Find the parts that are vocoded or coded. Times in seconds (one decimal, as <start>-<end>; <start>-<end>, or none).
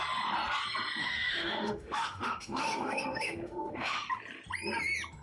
1.0-4.1